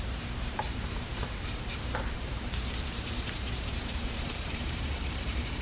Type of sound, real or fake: fake